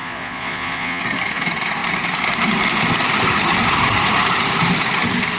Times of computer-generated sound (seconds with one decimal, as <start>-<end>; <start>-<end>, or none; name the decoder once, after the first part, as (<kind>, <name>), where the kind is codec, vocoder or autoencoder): 0.0-1.0 (vocoder, Vocos)